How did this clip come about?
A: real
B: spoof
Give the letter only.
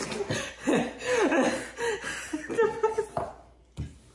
A